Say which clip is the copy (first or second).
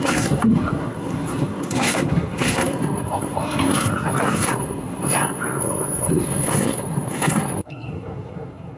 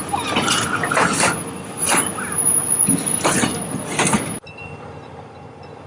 first